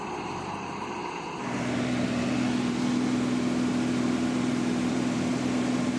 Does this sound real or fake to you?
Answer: fake